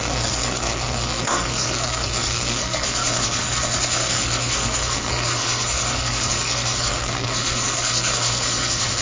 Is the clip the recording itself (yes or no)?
no